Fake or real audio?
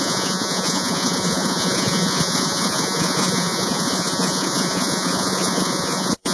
fake